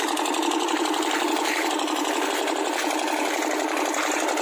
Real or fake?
fake